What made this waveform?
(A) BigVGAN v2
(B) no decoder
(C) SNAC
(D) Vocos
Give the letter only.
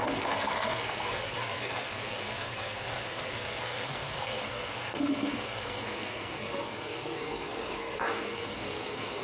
C